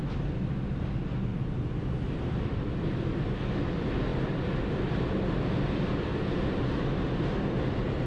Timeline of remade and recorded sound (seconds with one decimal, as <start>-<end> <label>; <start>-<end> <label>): 0.0-1.3 recorded; 1.3-3.1 remade; 3.1-8.1 recorded